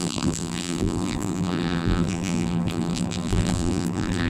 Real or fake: fake